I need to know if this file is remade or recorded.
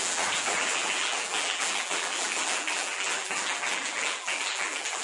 remade